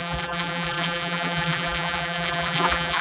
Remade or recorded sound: remade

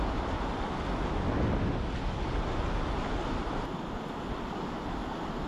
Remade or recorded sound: recorded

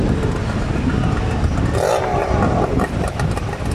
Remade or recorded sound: recorded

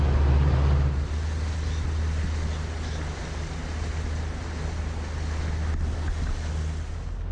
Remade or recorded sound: recorded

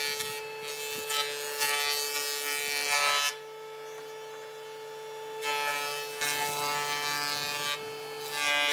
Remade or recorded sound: recorded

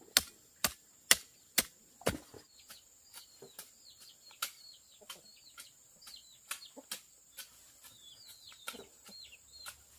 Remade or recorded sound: recorded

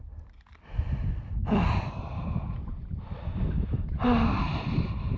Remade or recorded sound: remade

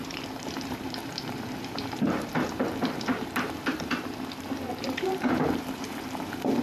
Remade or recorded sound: remade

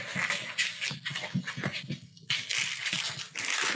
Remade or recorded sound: recorded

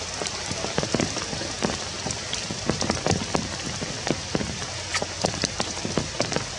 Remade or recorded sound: remade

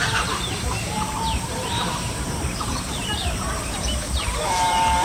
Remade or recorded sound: remade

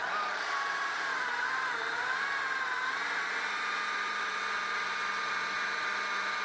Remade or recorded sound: remade